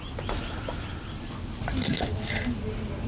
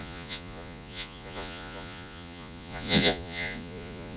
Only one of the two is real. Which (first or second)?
first